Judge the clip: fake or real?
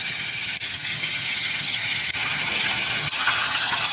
fake